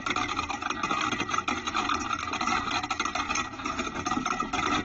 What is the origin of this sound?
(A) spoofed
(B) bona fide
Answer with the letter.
B